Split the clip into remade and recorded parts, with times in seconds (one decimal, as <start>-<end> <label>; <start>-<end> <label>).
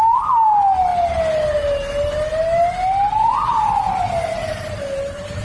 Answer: 0.0-5.4 recorded